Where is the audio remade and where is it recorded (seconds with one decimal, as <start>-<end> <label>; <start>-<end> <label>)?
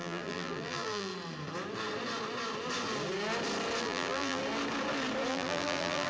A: 0.0-1.1 remade; 1.1-3.8 recorded; 3.8-4.4 remade; 4.4-5.3 recorded; 5.3-6.1 remade